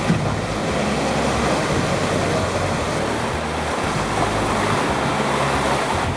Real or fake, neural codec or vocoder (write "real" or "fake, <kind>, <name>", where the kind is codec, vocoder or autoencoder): real